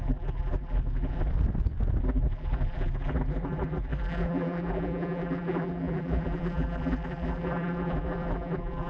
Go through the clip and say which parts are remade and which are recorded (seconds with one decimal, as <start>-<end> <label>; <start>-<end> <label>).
0.0-1.3 remade; 1.3-2.0 recorded; 2.0-8.9 remade